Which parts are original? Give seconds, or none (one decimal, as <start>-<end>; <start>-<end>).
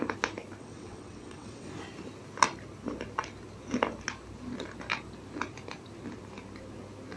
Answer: 0.0-0.6; 1.7-7.2